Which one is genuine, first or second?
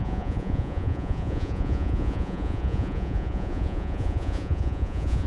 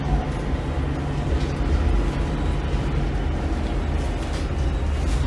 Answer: second